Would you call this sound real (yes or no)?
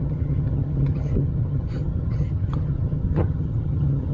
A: no